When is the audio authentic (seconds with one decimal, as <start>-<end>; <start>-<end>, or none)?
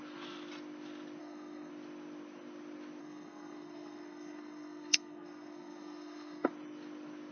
0.0-1.2; 1.7-3.0; 6.5-7.3